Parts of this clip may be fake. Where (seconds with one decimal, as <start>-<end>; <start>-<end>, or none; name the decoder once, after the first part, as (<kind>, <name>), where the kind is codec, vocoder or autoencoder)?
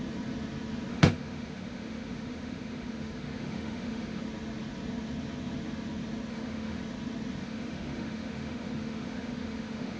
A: 0.9-4.2 (autoencoder, DAC-VAE); 6.3-6.8; 7.4-10.0